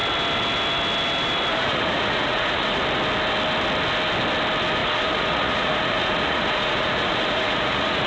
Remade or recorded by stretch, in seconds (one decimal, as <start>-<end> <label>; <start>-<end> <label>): 0.0-1.5 recorded; 1.5-2.8 remade; 2.8-4.8 recorded; 4.8-8.1 remade